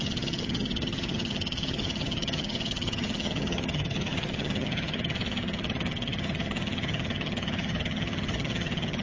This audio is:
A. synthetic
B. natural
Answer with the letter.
A